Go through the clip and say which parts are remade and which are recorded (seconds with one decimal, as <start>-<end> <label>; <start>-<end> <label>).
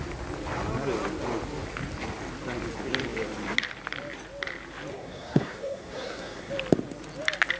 0.0-4.9 recorded; 4.9-6.5 remade; 6.5-7.6 recorded